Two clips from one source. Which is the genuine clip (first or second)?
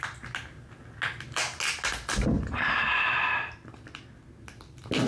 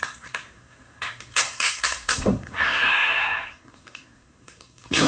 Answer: first